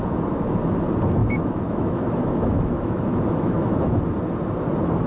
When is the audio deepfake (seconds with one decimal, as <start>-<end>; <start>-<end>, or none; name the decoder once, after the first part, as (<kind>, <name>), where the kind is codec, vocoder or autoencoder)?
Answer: 1.2-4.0 (autoencoder, DAC-VAE)